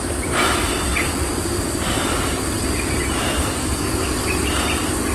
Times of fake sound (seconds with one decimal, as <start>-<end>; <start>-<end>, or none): 3.4-3.9